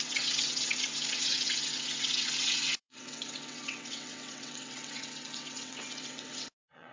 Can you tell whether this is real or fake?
fake